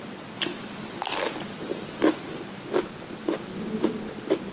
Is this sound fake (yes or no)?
no